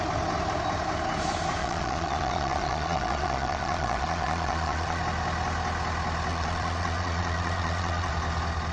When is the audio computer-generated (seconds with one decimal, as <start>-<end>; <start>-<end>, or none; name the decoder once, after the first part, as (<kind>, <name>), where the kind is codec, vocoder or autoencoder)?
1.6-5.0 (vocoder, Vocos); 6.3-8.1